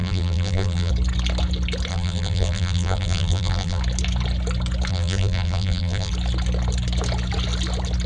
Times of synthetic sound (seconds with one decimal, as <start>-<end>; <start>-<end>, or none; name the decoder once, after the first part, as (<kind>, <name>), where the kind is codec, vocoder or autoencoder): 0.0-0.9 (vocoder, BigVGAN v2); 1.9-3.8; 4.9-6.1

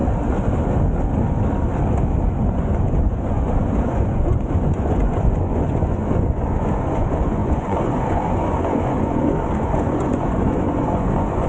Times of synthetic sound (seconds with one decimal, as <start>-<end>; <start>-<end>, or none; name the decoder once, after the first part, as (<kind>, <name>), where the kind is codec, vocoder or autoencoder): 2.5-11.5 (vocoder, Vocos)

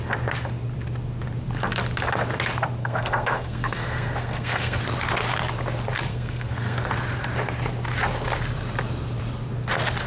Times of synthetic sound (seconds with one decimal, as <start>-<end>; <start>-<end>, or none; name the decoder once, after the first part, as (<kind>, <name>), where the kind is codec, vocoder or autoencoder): 2.8-4.8 (codec, SNAC); 6.1-6.9

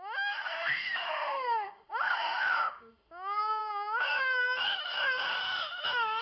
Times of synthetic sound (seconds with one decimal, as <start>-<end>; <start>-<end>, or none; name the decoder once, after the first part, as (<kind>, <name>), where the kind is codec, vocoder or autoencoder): 0.0-6.2 (autoencoder, DAC-VAE)

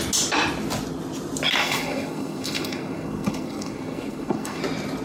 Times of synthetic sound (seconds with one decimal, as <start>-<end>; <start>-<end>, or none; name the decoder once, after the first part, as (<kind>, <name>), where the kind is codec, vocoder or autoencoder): 1.6-4.6 (codec, SNAC)

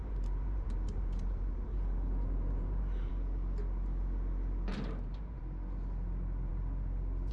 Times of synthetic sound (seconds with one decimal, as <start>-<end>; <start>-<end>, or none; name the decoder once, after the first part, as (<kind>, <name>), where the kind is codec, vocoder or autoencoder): 0.0-3.1 (vocoder, BigVGAN v2); 4.7-5.4